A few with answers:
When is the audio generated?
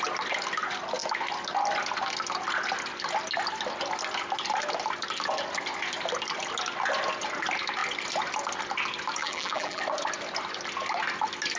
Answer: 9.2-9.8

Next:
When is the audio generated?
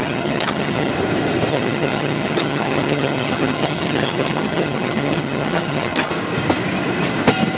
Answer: 0.0-0.9; 1.5-6.1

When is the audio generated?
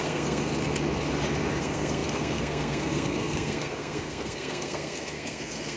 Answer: 0.0-0.5; 1.6-5.8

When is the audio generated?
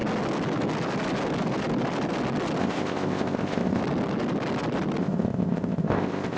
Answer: 2.6-3.8; 5.0-6.4